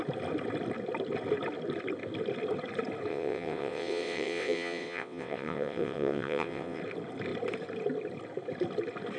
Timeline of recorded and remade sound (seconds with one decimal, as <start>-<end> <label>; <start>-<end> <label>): 0.0-3.1 recorded; 3.1-6.8 remade; 6.8-9.2 recorded